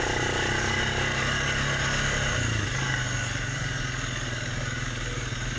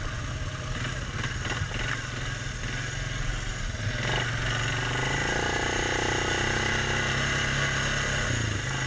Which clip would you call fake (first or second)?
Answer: first